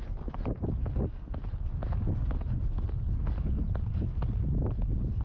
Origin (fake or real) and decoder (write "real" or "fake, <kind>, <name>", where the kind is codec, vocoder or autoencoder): real